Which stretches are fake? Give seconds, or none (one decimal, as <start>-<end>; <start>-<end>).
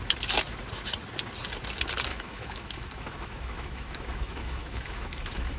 2.1-5.6